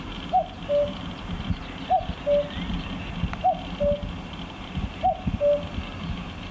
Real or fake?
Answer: real